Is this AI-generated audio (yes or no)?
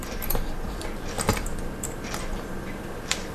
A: yes